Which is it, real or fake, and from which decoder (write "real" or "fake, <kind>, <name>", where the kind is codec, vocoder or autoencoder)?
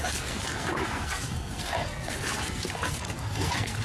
fake, codec, SNAC